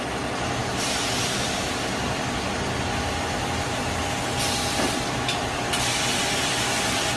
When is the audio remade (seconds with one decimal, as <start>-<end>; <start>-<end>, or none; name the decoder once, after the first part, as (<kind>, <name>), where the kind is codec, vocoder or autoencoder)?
0.6-2.5 (vocoder, BigVGAN v2)